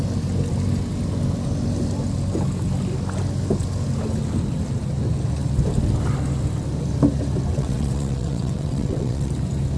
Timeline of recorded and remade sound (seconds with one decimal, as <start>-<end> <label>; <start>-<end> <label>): 0.0-7.5 recorded; 7.5-9.3 remade; 9.3-9.8 recorded